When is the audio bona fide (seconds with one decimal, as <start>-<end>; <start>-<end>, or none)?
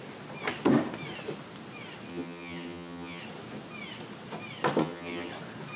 0.0-2.1; 3.2-4.8; 5.3-5.8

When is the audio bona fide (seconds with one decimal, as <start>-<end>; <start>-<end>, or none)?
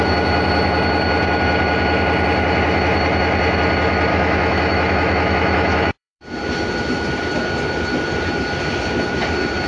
0.0-4.1; 6.2-9.7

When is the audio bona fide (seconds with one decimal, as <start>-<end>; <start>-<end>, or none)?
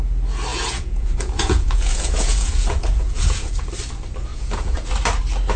0.0-0.5; 3.7-4.3; 4.9-5.6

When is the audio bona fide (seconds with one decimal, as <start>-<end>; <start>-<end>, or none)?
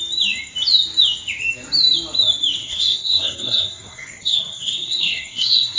0.0-2.6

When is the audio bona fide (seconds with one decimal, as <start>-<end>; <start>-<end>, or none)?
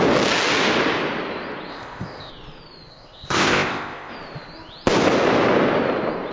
0.0-1.7; 2.3-2.9; 4.1-6.3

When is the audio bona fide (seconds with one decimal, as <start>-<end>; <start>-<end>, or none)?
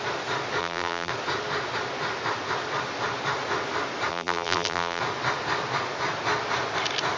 0.0-0.6; 1.1-4.1; 5.0-7.2